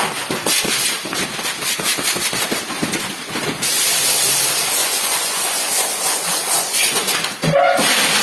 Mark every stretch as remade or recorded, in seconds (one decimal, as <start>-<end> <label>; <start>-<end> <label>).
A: 0.0-4.8 recorded; 4.8-7.2 remade; 7.2-8.2 recorded